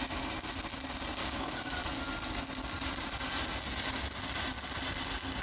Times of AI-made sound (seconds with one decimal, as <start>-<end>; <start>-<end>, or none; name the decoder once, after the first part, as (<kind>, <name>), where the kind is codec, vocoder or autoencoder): 1.2-1.7 (codec, DAC)